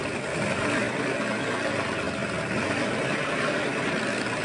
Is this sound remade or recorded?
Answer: recorded